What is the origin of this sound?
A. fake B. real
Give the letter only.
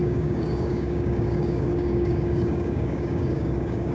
A